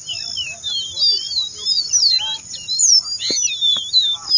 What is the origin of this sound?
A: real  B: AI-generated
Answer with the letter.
A